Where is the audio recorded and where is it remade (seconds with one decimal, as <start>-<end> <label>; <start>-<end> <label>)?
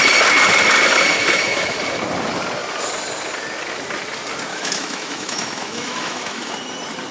0.0-1.1 recorded; 1.1-1.8 remade; 1.8-4.5 recorded; 4.5-6.5 remade; 6.5-7.1 recorded